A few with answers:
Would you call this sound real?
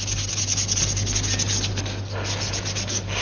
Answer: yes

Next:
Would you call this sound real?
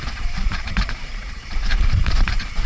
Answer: no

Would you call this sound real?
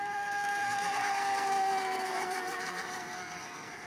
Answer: no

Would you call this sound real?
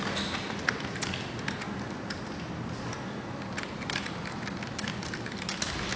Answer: yes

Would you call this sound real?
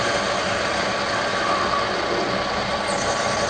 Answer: yes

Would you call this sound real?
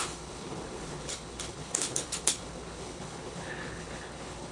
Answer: no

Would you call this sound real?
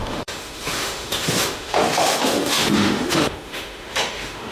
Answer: no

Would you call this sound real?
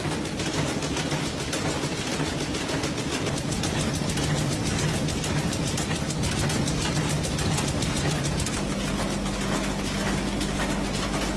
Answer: yes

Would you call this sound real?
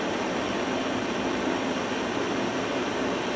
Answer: yes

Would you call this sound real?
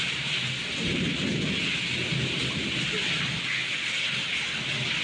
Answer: yes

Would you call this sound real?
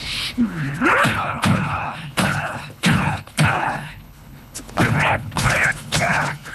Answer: no